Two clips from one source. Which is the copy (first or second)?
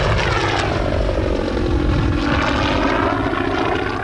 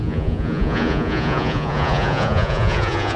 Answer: second